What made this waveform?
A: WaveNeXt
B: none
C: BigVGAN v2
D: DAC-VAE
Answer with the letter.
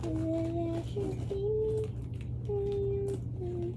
B